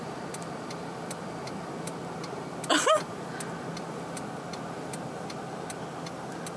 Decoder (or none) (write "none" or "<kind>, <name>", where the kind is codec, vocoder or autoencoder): none